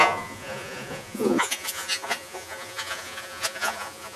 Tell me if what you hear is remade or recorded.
remade